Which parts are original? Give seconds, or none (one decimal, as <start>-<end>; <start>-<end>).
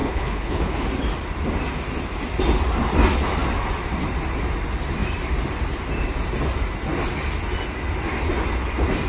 0.9-9.1